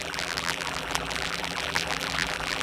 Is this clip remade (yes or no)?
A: yes